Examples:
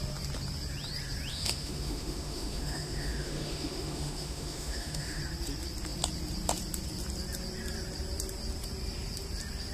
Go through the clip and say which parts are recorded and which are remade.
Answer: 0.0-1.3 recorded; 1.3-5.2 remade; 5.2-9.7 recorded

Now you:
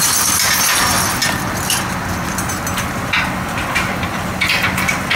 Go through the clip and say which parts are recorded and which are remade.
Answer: 0.0-5.2 recorded

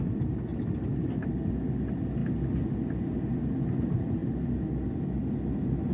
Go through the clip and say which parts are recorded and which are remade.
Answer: 0.0-5.9 recorded

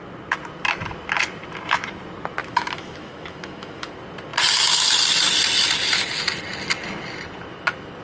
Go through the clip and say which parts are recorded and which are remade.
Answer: 0.0-2.4 recorded; 2.4-3.9 remade; 3.9-8.0 recorded

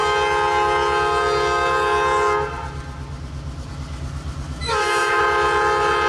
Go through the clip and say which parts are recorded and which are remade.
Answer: 0.0-4.6 recorded; 4.6-5.2 remade; 5.2-6.1 recorded

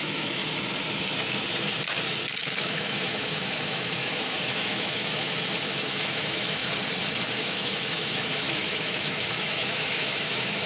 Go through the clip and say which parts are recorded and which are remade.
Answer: 0.0-0.4 remade; 0.4-2.4 recorded; 2.4-6.6 remade; 6.6-7.4 recorded; 7.4-10.7 remade